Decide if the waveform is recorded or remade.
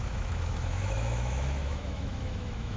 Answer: remade